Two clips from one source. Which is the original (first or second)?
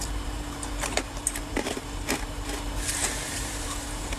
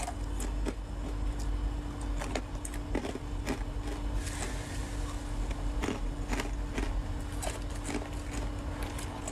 second